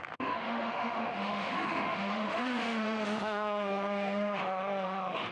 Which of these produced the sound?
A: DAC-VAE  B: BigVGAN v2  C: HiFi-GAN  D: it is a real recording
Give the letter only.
A